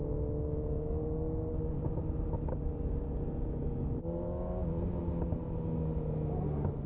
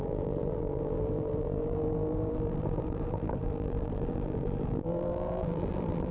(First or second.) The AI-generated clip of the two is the second